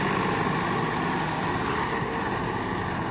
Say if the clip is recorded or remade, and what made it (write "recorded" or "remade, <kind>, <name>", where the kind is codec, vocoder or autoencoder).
recorded